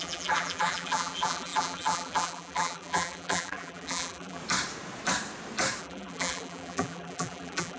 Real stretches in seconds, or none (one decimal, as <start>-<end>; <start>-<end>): 4.4-5.8